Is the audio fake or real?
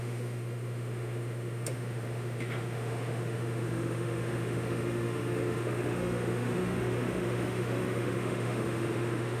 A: fake